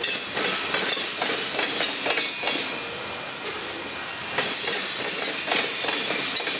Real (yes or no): yes